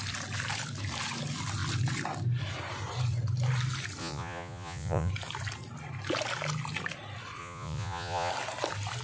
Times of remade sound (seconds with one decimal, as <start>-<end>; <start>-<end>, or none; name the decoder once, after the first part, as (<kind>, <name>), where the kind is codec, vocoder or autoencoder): 4.0-5.1 (vocoder, Vocos); 7.4-8.3